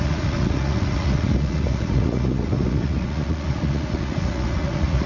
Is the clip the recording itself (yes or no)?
no